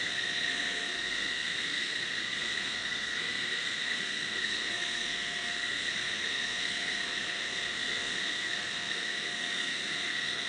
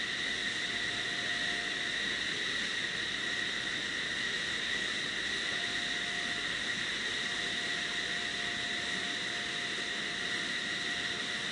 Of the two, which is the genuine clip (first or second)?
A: second